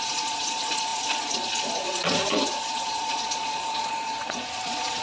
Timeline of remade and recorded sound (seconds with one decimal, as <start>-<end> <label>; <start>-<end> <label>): 0.0-5.0 remade